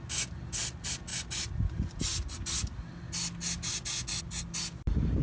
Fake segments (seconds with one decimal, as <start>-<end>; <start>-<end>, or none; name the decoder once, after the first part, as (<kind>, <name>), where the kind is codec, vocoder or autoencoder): none